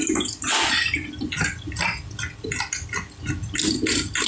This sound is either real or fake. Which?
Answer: real